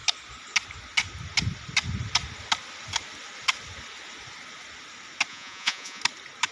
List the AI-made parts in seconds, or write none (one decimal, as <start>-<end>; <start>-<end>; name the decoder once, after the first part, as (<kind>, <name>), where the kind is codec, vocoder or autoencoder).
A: 5.3-6.0 (vocoder, Vocos)